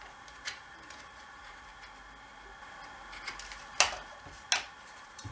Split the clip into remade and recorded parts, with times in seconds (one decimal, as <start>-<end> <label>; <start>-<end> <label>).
0.0-1.7 remade; 1.7-4.8 recorded; 4.8-5.3 remade